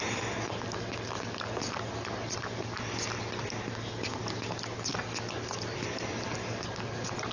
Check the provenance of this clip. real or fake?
real